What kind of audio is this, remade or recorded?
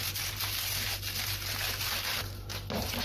recorded